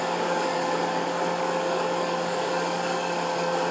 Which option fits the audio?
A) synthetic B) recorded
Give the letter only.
A